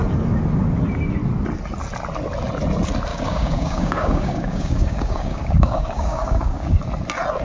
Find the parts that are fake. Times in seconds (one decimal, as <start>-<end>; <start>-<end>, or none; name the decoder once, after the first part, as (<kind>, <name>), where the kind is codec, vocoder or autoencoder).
3.1-6.8 (codec, DAC)